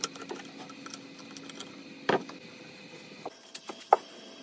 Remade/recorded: recorded